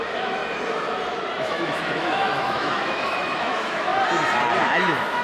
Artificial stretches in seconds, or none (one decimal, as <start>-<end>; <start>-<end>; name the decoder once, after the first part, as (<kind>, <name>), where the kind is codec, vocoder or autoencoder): 0.0-0.4 (autoencoder, DAC-VAE); 1.4-3.9; 4.6-5.2